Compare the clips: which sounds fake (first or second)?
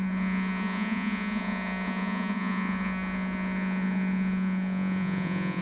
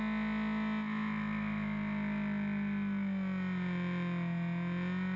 first